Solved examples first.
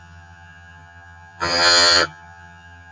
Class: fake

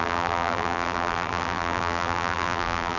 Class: fake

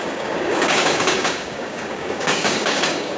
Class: fake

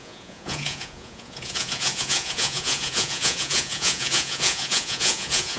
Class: fake